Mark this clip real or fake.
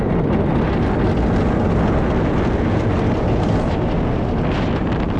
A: real